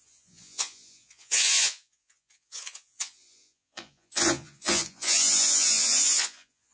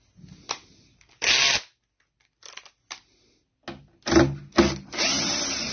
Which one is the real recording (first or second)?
second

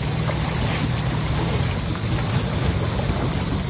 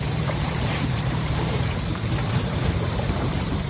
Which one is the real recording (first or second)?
first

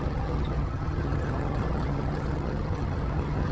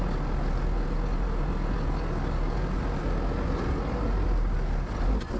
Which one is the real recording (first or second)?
second